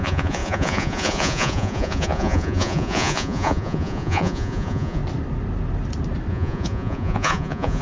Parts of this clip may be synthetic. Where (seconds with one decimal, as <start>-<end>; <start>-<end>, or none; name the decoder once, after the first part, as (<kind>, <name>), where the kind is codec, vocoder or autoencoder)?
0.0-5.0 (vocoder, Vocos); 6.3-7.8